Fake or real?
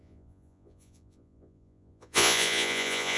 fake